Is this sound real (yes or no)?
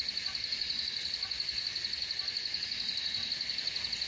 yes